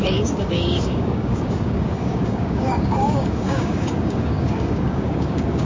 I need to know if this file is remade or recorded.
remade